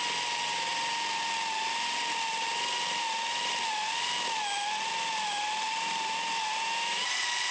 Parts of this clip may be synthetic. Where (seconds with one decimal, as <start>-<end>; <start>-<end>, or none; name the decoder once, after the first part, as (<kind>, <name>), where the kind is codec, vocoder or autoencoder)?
none